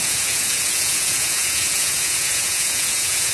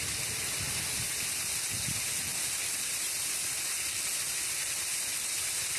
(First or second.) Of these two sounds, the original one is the second